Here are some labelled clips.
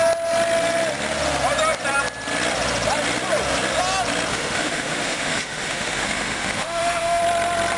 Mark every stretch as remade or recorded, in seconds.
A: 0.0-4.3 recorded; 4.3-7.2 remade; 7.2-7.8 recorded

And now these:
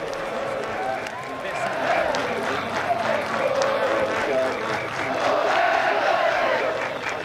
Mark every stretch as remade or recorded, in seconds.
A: 0.0-5.8 recorded; 5.8-6.6 remade; 6.6-7.2 recorded

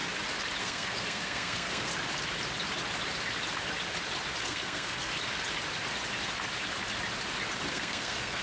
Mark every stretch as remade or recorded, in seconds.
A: 0.0-0.6 recorded; 0.6-1.9 remade; 1.9-4.4 recorded; 4.4-5.1 remade; 5.1-7.7 recorded; 7.7-8.4 remade

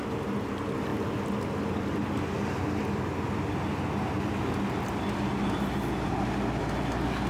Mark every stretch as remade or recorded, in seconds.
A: 0.0-7.3 recorded

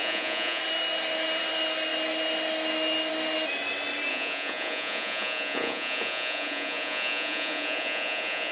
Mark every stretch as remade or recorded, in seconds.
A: 0.0-0.6 remade; 0.6-4.1 recorded; 4.1-8.5 remade

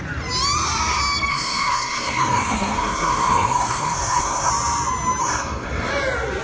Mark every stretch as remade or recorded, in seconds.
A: 0.0-1.3 recorded; 1.3-4.5 remade; 4.5-5.2 recorded; 5.2-5.9 remade; 5.9-6.4 recorded

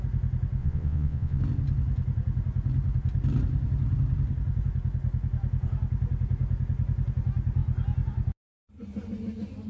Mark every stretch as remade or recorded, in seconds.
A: 0.0-0.6 recorded; 0.6-1.4 remade; 1.4-9.7 recorded